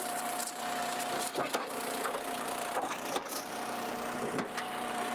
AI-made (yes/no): yes